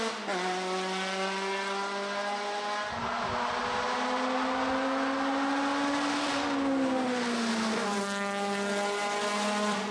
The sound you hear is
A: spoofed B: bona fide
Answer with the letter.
B